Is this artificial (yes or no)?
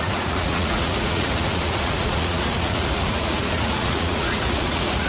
yes